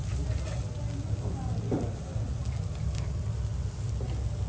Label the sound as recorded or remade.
recorded